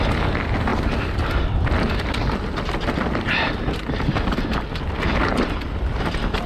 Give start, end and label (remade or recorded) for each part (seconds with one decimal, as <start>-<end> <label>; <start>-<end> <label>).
0.0-6.5 recorded

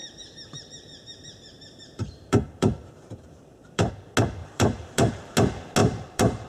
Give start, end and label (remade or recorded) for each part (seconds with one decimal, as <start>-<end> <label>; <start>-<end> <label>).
0.0-3.9 remade; 3.9-4.4 recorded; 4.4-5.1 remade; 5.1-5.8 recorded; 5.8-6.5 remade

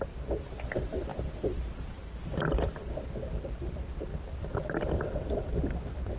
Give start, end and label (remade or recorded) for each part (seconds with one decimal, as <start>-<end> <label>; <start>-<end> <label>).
0.0-1.1 recorded; 1.1-2.3 remade; 2.3-4.1 recorded; 4.1-6.2 remade

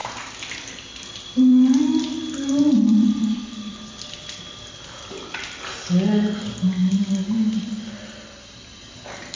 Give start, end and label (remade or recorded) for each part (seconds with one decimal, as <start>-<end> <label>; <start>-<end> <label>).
0.0-5.1 remade; 5.1-6.8 recorded; 6.8-8.9 remade; 8.9-9.4 recorded

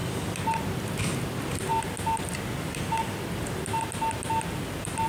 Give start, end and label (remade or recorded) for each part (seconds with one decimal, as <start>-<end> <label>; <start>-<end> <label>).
0.0-5.1 recorded

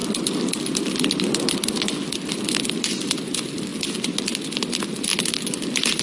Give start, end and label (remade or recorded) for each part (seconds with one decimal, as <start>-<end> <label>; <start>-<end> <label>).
0.0-6.0 recorded